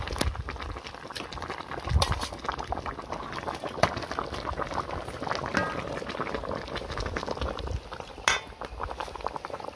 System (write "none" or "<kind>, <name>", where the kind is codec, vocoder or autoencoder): none